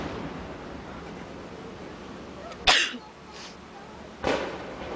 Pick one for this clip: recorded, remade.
recorded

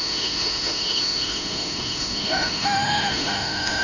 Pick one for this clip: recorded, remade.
remade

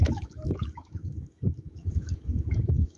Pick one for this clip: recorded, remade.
remade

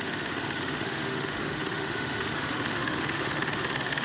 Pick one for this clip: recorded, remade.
remade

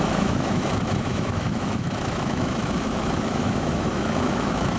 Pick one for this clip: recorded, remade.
remade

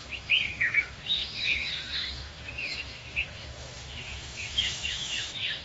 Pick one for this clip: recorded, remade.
remade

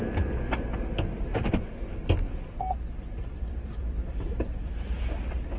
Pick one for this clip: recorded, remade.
recorded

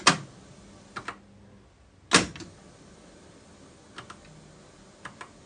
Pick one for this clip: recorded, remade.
recorded